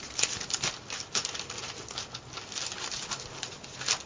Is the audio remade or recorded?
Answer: recorded